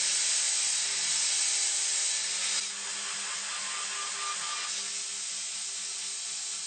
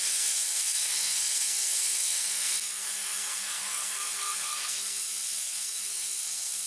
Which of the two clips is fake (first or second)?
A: second